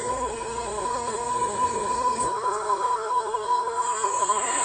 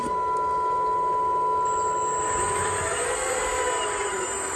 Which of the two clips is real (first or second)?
second